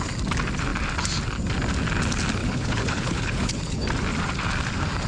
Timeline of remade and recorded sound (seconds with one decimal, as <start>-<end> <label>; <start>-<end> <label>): 0.0-2.4 recorded; 2.4-3.8 remade; 3.8-5.1 recorded